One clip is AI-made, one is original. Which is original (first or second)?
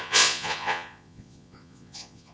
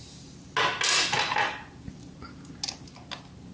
second